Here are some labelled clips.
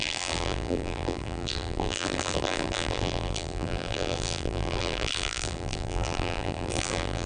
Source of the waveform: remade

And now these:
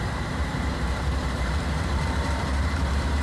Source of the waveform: remade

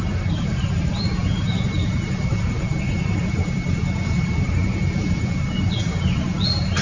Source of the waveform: remade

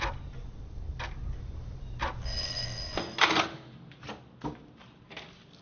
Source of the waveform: recorded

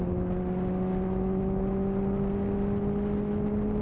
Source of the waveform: recorded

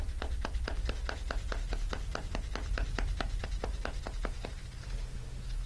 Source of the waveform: recorded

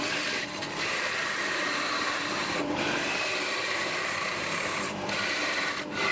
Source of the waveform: remade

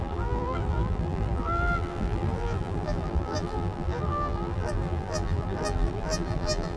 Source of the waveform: remade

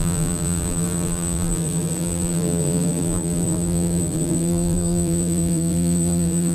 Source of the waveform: remade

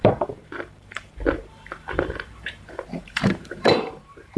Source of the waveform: remade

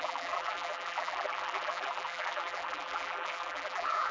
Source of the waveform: remade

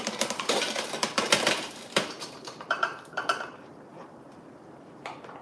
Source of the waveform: remade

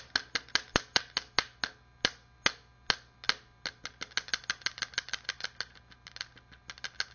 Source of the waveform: recorded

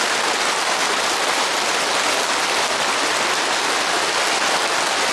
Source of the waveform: recorded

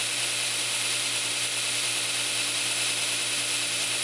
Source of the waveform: recorded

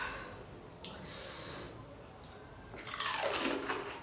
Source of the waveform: recorded